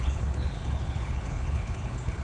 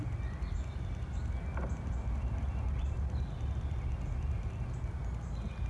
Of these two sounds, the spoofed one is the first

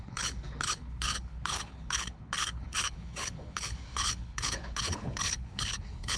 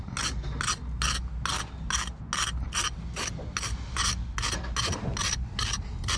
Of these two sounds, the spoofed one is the first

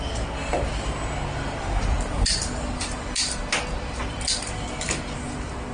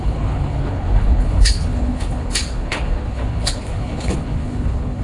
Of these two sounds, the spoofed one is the second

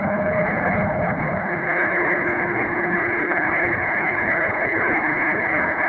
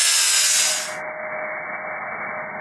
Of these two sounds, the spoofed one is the first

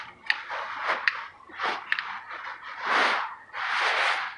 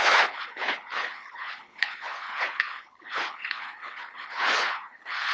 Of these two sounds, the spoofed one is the second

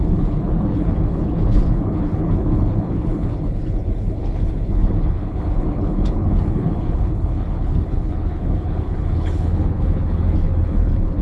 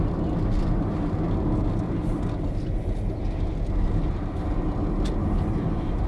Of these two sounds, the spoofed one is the first